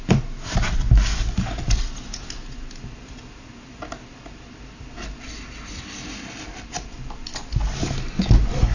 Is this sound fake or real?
real